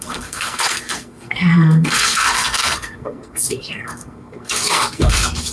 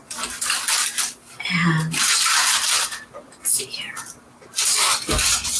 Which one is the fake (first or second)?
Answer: first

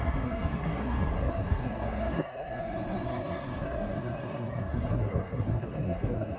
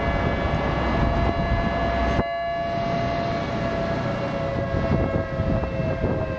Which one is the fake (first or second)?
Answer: first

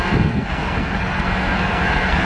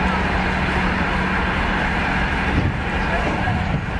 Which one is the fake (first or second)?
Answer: first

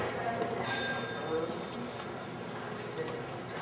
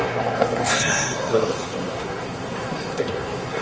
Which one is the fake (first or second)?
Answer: second